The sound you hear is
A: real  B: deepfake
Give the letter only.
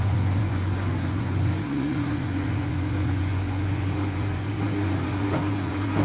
B